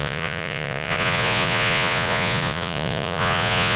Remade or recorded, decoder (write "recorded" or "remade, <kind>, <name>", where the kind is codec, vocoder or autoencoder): remade, vocoder, Vocos